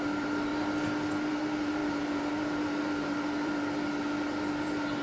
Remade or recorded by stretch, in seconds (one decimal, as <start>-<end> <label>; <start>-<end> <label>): 0.0-0.5 remade; 0.5-1.3 recorded; 1.3-5.0 remade